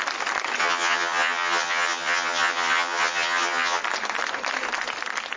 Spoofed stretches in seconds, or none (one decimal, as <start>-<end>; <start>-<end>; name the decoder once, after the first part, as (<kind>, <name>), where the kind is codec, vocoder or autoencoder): 0.6-3.8 (vocoder, HiFi-GAN)